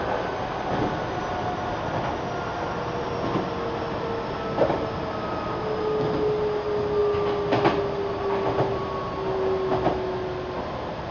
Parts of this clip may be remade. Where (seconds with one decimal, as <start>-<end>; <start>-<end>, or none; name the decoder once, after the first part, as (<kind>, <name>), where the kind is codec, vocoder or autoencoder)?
2.5-3.0 (vocoder, BigVGAN v2)